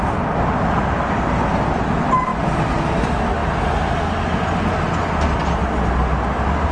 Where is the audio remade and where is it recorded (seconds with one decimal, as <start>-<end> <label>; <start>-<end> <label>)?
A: 0.0-6.7 recorded